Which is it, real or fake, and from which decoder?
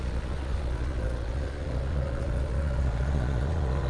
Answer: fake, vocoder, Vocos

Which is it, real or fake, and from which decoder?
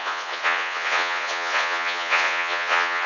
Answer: fake, vocoder, Vocos